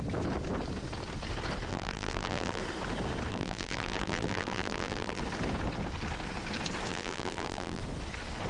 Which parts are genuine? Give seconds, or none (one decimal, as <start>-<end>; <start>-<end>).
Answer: 0.0-1.7; 2.6-3.3; 5.2-6.9; 7.8-8.5